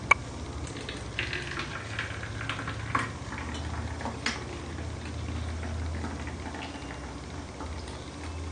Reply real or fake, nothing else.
real